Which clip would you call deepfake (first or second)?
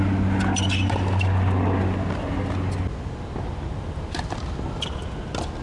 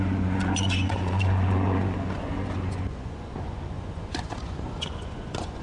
second